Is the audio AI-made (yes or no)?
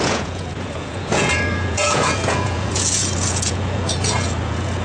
yes